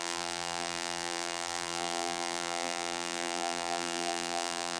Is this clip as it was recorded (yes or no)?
no